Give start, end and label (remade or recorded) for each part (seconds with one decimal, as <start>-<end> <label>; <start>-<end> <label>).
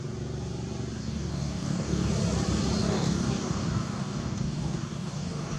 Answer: 0.0-1.0 recorded; 1.0-2.1 remade; 2.1-2.8 recorded; 2.8-5.6 remade